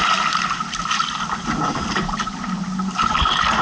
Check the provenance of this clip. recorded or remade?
recorded